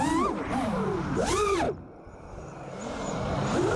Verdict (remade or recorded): remade